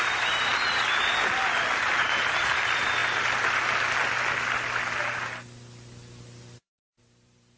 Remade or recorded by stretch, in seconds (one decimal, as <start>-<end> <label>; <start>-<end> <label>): 0.0-0.5 remade; 0.5-1.8 recorded; 1.8-3.0 remade; 3.0-7.0 recorded; 7.0-7.6 remade